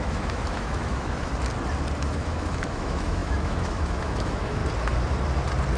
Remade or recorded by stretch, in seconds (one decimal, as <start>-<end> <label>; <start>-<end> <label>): 0.0-1.3 remade; 1.3-2.0 recorded; 2.0-4.6 remade; 4.6-5.8 recorded